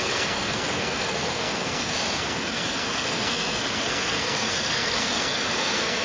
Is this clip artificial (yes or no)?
yes